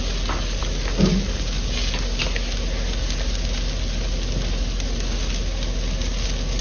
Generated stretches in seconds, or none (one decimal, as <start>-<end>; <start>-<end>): none